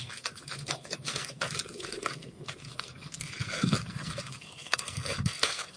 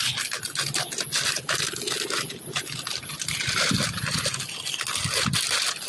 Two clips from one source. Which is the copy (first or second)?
first